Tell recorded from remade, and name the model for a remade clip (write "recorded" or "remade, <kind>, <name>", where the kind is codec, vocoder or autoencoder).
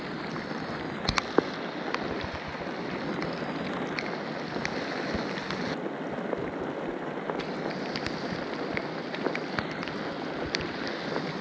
recorded